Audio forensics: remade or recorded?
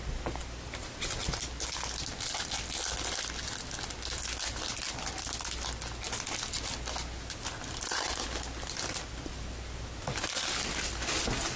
recorded